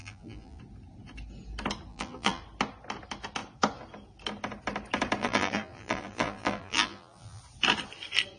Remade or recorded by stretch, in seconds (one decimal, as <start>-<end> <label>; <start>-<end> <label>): 0.0-0.6 remade; 0.6-1.9 recorded; 1.9-2.4 remade; 2.4-5.2 recorded; 5.2-7.4 remade; 7.4-8.4 recorded